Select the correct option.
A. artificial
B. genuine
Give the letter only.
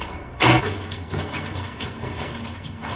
A